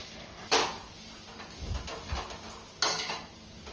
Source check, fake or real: real